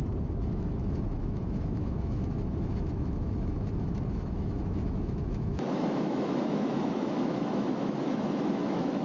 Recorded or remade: remade